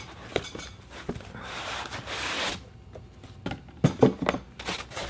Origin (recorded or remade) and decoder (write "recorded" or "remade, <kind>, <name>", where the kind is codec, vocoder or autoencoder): recorded